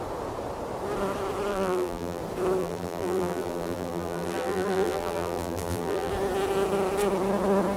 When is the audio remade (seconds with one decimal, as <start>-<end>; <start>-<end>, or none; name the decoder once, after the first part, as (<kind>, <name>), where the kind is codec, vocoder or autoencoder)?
1.5-2.2 (vocoder, BigVGAN v2); 2.6-6.1